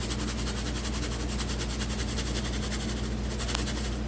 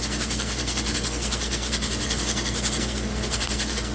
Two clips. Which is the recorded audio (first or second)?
first